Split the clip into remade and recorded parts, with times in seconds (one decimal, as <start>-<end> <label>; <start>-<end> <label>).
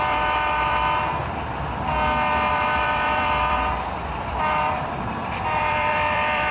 0.0-1.2 remade; 1.2-2.5 recorded; 2.5-6.5 remade